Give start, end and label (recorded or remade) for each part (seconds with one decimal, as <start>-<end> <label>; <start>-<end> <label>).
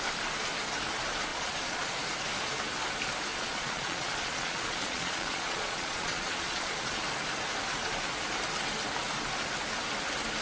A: 0.0-1.3 recorded; 1.3-1.9 remade; 1.9-3.3 recorded; 3.3-7.0 remade; 7.0-10.4 recorded